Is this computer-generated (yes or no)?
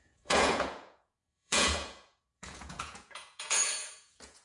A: yes